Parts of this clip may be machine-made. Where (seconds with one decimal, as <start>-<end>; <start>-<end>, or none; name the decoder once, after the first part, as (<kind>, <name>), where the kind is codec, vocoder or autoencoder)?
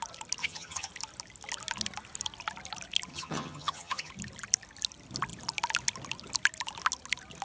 0.4-0.9 (vocoder, HiFi-GAN); 3.1-4.1